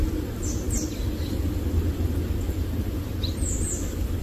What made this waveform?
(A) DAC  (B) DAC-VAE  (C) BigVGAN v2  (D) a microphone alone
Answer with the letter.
D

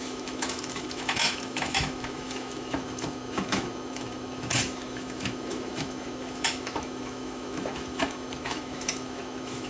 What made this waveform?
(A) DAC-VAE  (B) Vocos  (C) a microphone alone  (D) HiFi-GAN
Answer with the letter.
A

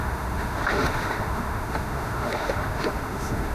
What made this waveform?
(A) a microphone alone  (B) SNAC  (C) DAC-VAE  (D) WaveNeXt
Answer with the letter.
C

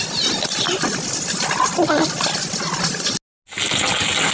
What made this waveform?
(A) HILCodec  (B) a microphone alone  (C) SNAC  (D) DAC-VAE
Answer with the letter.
B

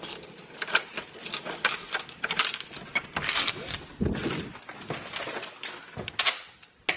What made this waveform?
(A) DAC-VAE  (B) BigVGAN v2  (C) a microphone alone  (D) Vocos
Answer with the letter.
C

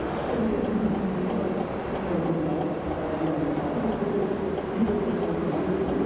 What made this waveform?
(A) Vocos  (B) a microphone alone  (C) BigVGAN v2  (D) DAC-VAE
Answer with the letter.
B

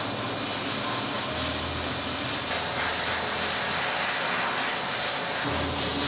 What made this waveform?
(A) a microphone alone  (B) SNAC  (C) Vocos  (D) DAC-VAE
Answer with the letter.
A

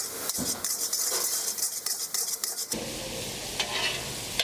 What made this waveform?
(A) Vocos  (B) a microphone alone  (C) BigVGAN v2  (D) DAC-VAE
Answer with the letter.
B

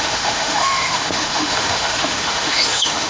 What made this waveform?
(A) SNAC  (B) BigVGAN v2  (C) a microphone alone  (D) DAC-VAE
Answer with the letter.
D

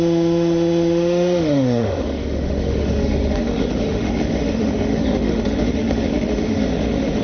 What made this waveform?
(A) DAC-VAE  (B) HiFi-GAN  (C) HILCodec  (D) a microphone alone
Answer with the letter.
A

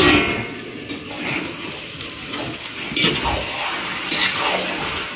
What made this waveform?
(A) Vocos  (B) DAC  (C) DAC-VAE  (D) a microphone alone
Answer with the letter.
D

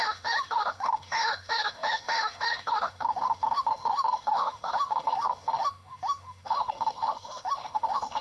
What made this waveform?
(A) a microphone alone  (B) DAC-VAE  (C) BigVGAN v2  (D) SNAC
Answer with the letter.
B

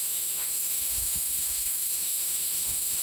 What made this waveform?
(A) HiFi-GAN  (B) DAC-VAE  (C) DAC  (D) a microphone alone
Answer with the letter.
B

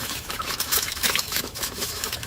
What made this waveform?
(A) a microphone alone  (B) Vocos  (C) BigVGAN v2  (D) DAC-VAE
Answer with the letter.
D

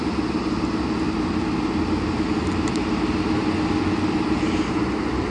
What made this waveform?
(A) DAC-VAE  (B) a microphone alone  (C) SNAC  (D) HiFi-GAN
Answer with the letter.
B